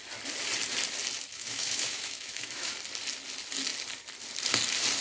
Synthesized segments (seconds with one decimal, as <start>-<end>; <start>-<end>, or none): 1.3-2.7